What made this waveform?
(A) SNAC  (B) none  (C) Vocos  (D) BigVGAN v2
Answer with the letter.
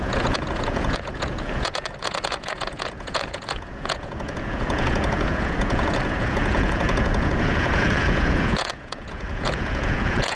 C